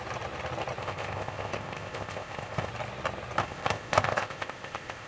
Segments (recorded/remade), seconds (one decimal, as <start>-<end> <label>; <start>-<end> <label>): 0.0-0.8 recorded; 0.8-2.7 remade; 2.7-3.4 recorded; 3.4-5.1 remade